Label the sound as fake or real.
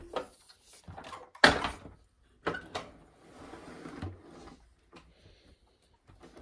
real